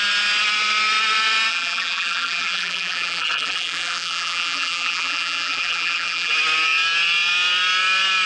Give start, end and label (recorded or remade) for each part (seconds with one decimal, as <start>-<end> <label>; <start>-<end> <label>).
0.0-1.5 recorded; 1.5-6.3 remade; 6.3-8.3 recorded